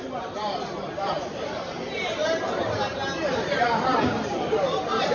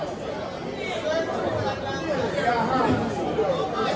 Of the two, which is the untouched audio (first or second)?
second